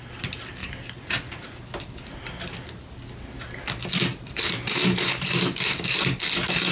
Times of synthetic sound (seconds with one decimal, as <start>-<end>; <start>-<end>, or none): 0.6-1.6; 4.1-6.2